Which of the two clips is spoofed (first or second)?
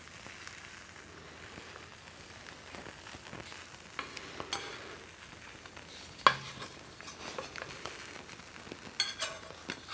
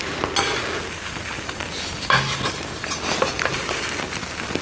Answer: second